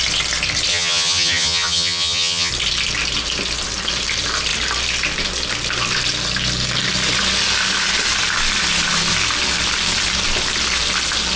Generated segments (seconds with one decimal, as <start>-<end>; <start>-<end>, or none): 0.7-2.5